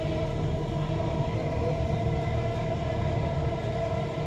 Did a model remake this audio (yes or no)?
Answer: no